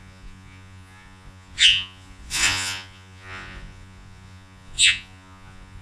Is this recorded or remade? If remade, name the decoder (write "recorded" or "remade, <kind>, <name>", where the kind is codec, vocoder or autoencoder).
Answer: remade, vocoder, Vocos